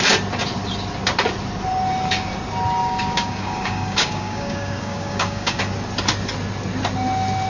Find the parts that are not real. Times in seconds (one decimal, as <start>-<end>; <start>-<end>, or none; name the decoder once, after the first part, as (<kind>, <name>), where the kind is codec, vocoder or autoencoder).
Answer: 2.8-5.6 (codec, DAC)